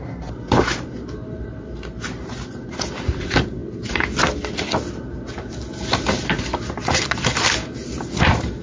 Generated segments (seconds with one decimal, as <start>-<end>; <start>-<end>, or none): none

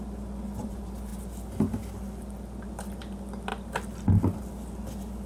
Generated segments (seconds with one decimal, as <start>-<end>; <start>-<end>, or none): none

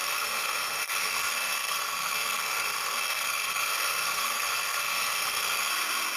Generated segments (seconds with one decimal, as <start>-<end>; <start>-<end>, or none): 0.0-5.7

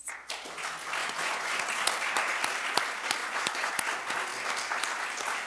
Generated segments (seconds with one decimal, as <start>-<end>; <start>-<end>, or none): 1.0-1.6; 3.2-3.7

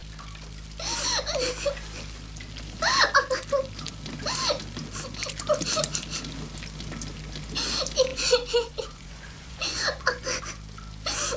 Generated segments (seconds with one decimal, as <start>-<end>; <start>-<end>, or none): 8.1-10.4